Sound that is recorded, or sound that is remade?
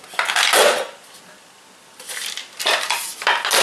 recorded